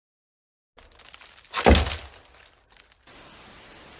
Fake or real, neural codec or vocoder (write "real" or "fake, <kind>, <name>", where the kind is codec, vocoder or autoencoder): real